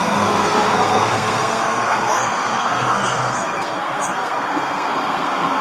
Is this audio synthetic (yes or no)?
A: yes